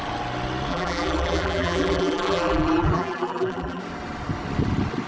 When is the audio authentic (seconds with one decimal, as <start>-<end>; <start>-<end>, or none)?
0.0-0.7; 3.8-5.1